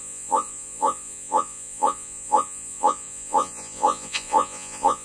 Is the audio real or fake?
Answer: fake